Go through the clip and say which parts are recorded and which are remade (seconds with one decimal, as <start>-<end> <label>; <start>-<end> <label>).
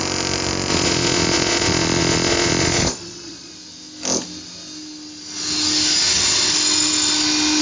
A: 0.0-0.7 recorded; 0.7-3.5 remade; 3.5-7.6 recorded